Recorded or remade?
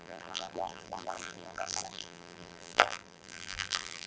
remade